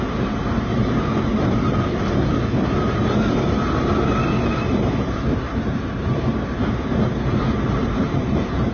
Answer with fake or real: fake